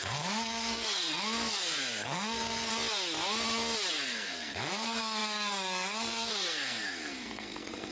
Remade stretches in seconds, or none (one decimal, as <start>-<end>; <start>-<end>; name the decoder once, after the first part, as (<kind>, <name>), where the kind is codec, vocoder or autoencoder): 0.0-2.7 (codec, SNAC); 3.9-7.9